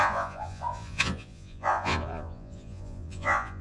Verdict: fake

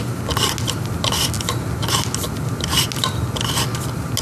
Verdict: real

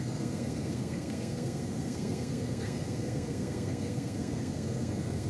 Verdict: fake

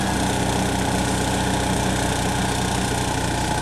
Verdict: real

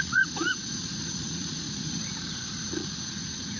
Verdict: fake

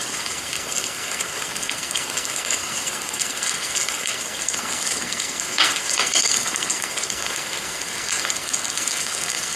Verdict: fake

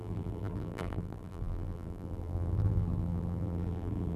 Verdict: fake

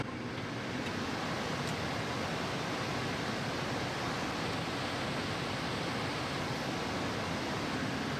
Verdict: real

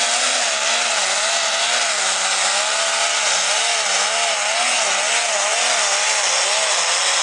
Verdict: real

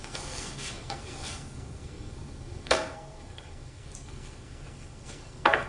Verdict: fake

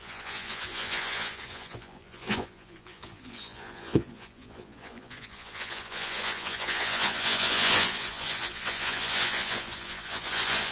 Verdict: fake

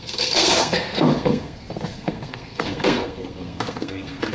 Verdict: fake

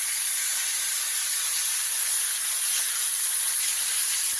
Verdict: real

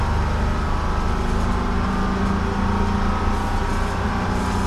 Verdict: real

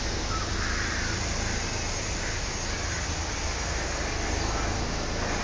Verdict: real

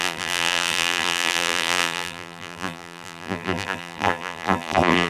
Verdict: fake